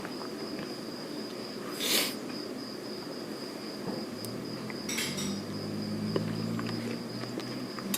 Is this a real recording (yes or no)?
yes